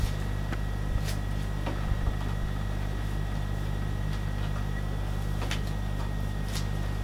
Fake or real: real